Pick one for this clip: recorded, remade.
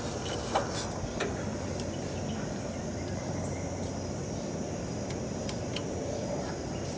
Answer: recorded